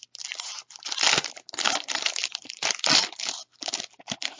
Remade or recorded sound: recorded